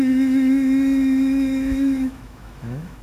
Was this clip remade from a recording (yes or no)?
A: yes